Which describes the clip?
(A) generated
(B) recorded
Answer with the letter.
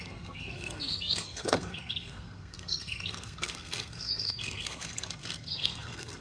A